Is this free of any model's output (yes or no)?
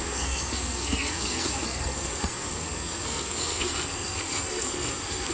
no